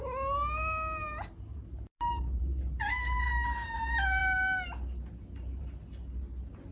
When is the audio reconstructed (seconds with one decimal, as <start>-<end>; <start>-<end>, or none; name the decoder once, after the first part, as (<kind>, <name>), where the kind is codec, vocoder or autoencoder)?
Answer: 1.5-3.2 (vocoder, BigVGAN v2)